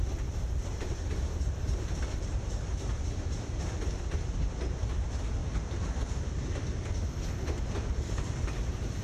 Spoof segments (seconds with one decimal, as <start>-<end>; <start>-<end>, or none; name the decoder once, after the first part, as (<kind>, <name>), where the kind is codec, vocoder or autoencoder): 0.0-5.4 (vocoder, BigVGAN v2); 7.6-9.0